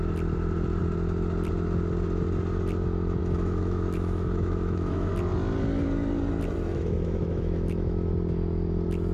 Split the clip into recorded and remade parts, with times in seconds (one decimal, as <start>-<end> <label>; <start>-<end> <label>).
0.0-3.2 recorded; 3.2-5.1 remade; 5.1-6.7 recorded; 6.7-8.1 remade; 8.1-9.1 recorded